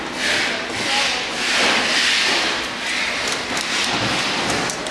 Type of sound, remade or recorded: recorded